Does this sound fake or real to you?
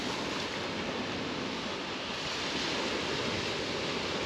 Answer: real